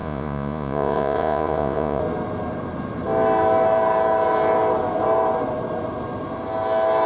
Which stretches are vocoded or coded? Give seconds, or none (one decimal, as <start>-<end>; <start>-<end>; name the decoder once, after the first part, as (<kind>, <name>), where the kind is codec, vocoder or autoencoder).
0.0-2.0 (vocoder, Vocos)